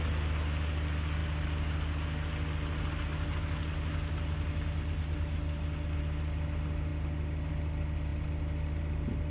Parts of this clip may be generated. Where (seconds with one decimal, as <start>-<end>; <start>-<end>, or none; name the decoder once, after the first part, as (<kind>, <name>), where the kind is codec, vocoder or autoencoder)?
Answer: none